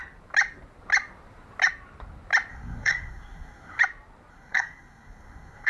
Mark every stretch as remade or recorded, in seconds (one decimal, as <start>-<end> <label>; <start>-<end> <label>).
0.0-2.5 recorded; 2.5-3.8 remade; 3.8-4.3 recorded; 4.3-5.7 remade

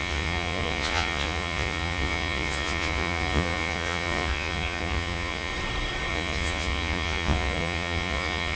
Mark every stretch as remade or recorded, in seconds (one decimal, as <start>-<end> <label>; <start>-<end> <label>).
0.0-5.5 remade; 5.5-6.1 recorded; 6.1-8.6 remade

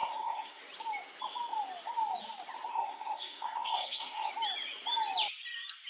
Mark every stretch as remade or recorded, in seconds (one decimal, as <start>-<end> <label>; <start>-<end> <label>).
0.0-0.6 remade; 0.6-2.7 recorded; 2.7-4.3 remade; 4.3-5.9 recorded

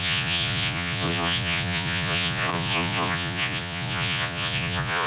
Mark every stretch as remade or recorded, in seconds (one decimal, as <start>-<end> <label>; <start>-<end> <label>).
0.0-5.1 remade

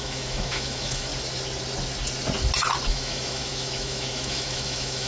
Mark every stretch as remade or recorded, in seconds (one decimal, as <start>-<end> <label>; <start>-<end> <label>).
0.0-1.1 remade; 1.1-2.9 recorded; 2.9-5.1 remade